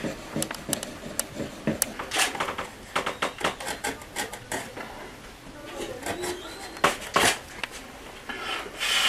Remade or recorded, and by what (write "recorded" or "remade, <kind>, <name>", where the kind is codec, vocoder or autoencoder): recorded